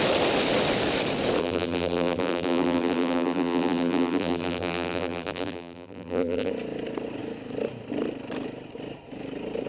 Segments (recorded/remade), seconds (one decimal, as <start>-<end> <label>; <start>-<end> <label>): 0.0-1.4 recorded; 1.4-6.5 remade; 6.5-9.7 recorded